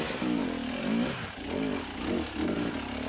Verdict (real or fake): real